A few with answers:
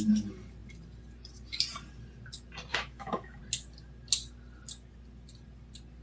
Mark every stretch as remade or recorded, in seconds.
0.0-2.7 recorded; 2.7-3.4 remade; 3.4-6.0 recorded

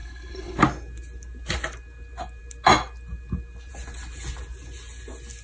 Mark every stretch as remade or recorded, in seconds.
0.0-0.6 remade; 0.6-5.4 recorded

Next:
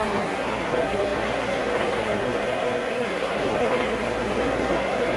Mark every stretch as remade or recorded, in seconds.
0.0-5.2 remade

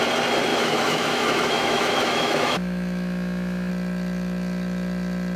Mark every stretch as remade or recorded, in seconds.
0.0-0.5 recorded; 0.5-3.7 remade; 3.7-5.4 recorded

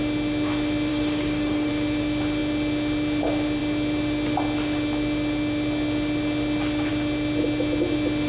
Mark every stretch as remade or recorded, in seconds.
0.0-0.9 recorded; 0.9-1.7 remade; 1.7-8.3 recorded

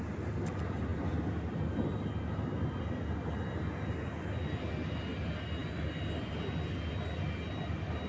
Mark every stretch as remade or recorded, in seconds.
0.0-8.1 recorded

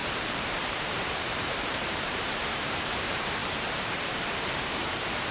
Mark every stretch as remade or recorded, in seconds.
0.0-5.3 remade

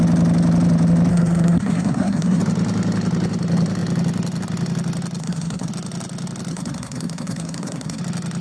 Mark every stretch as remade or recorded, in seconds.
0.0-1.1 recorded; 1.1-2.4 remade; 2.4-5.2 recorded; 5.2-5.7 remade; 5.7-6.5 recorded; 6.5-8.0 remade; 8.0-8.4 recorded